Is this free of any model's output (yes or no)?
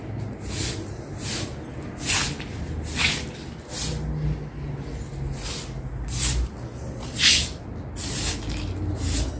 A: yes